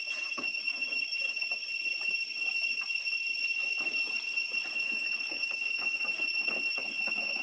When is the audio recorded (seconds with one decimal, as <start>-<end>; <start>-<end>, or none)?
1.6-4.7